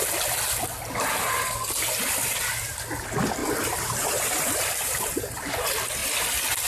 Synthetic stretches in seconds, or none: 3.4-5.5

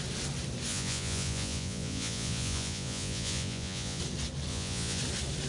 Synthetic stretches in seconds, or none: 0.7-4.0; 4.5-5.0